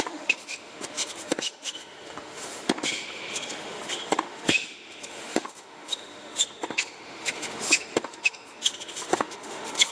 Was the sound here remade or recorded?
remade